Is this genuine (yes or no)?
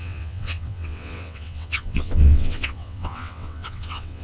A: no